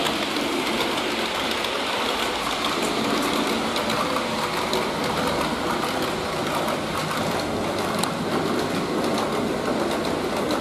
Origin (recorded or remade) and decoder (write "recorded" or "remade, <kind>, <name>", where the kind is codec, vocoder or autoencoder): recorded